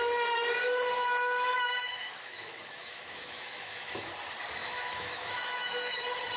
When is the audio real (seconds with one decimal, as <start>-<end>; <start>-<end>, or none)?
0.0-1.6; 4.1-4.6; 6.0-6.4